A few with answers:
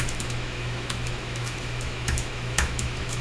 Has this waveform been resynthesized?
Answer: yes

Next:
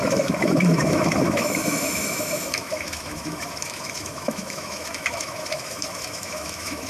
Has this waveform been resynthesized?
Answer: yes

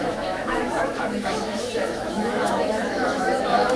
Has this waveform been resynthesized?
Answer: yes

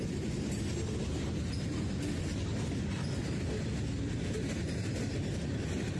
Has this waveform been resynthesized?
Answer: no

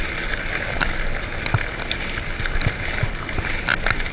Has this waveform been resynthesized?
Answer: no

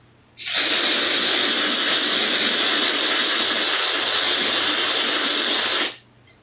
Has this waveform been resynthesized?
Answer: no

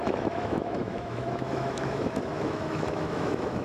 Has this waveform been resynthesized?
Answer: yes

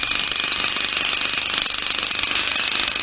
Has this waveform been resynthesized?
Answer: no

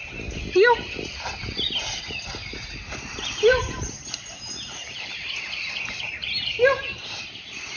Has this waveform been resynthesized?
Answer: no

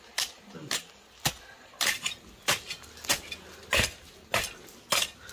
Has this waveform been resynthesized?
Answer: no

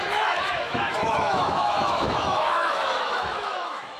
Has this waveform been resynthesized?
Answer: yes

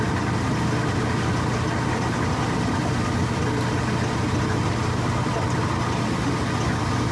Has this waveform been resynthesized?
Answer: no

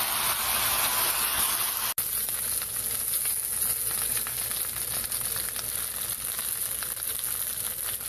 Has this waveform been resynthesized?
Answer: no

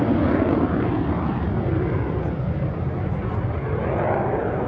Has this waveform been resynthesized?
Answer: no